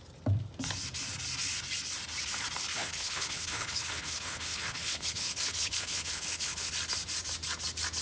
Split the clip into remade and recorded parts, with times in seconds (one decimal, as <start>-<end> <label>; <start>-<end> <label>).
0.0-2.7 recorded; 2.7-6.7 remade; 6.7-8.0 recorded